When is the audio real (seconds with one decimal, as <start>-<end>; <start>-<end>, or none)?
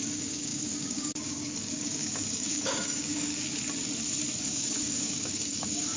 3.3-4.4